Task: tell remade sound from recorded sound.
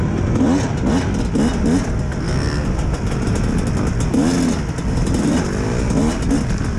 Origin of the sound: recorded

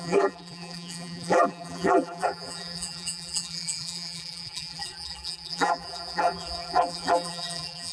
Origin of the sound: remade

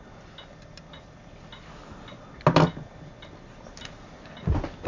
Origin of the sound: recorded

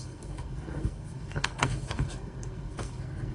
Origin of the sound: remade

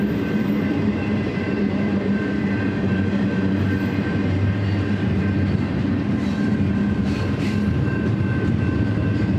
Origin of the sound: remade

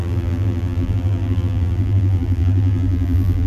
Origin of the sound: remade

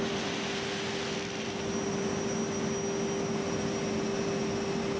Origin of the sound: recorded